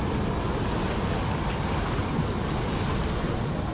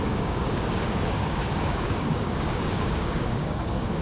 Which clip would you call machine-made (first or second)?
second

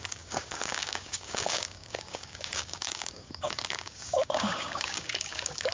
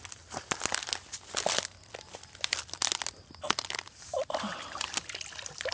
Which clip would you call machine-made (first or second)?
first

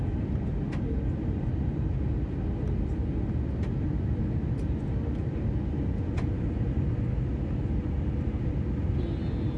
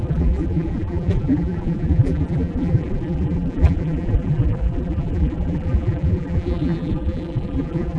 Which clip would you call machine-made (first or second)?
second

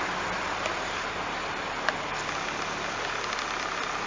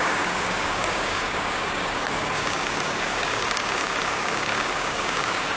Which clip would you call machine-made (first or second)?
second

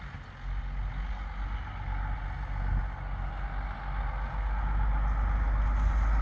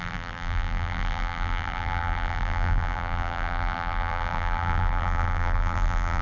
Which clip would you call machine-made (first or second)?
second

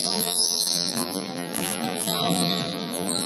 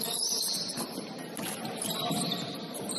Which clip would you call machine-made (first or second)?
first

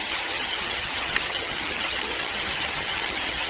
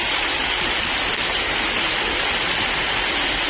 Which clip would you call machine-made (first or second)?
first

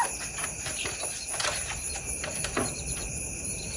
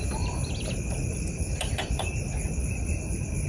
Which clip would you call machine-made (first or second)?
second